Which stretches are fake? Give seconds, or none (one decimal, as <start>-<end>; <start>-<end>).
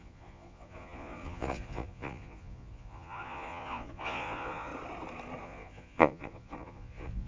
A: 0.0-4.7; 5.4-7.3